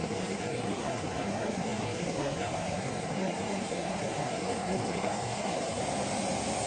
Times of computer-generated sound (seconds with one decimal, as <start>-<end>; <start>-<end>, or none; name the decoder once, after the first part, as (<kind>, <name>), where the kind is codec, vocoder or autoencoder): 0.0-5.8 (codec, SNAC)